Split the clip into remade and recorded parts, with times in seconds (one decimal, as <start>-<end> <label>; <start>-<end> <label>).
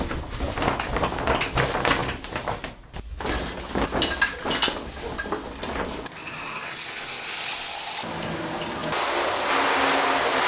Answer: 0.0-2.0 recorded; 2.0-3.2 remade; 3.2-10.5 recorded